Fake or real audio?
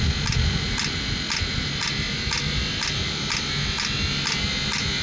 real